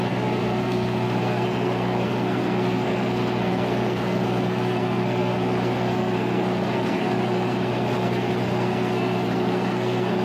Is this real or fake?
fake